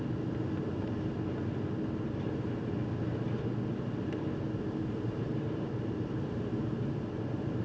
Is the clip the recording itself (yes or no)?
yes